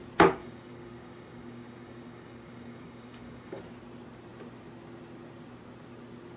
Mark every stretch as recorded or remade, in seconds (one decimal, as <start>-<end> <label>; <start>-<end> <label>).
0.0-0.4 recorded; 0.4-3.6 remade; 3.6-6.4 recorded